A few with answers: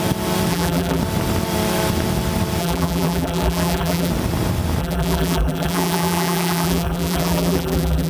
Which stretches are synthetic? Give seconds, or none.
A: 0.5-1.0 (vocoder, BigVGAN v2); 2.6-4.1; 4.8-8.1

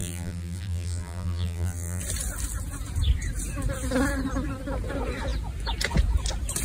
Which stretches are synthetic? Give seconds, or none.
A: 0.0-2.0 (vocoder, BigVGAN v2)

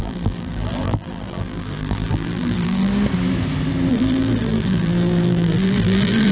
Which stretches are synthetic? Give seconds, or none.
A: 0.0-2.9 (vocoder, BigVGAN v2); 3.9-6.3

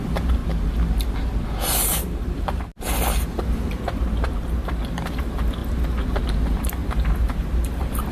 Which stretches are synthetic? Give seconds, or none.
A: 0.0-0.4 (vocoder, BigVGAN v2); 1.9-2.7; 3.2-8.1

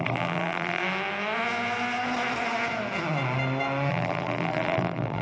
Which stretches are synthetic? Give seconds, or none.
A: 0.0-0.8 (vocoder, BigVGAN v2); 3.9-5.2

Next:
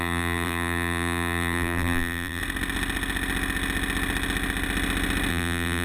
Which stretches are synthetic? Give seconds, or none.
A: 0.0-2.4 (vocoder, BigVGAN v2); 5.3-5.8